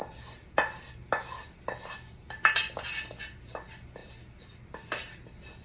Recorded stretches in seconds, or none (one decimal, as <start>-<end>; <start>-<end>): 0.0-5.6